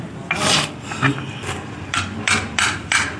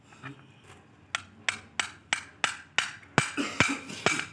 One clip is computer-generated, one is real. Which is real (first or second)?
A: second